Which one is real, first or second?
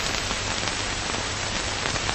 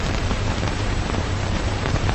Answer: first